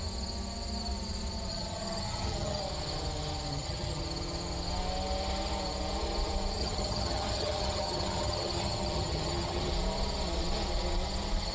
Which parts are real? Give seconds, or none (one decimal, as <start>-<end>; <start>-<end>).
0.0-1.5; 2.6-3.5; 4.0-6.6; 9.7-11.5